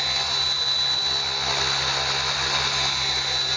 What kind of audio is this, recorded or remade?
recorded